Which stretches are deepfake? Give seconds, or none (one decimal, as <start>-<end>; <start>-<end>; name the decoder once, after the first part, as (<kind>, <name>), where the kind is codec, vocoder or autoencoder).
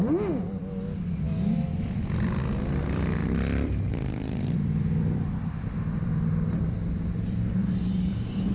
1.7-2.4 (vocoder, BigVGAN v2); 3.2-8.5